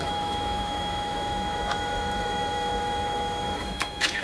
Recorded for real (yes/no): no